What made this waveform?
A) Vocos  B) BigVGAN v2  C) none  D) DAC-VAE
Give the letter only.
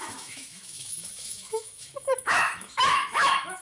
D